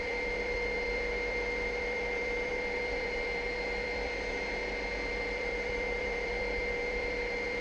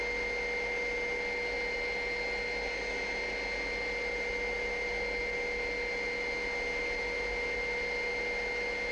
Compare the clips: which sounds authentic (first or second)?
second